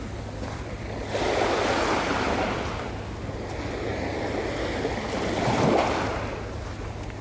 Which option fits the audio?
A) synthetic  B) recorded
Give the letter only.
B